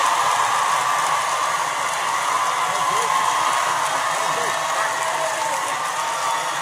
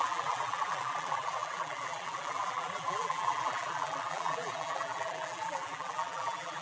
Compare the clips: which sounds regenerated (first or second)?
second